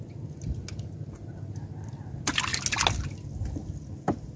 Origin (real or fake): real